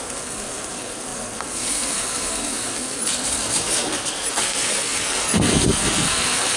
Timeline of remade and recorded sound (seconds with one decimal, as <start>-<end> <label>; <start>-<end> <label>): 0.0-6.6 remade